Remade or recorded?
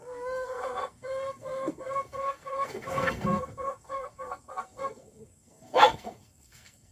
remade